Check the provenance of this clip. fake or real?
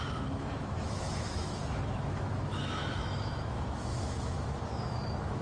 fake